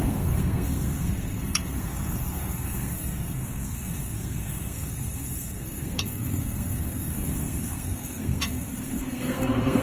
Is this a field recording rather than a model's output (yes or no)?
no